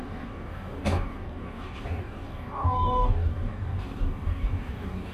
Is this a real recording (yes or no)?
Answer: no